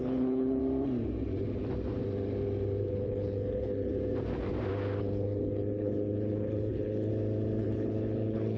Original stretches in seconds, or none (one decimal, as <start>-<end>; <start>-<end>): 0.6-2.9; 3.9-5.0; 7.1-7.6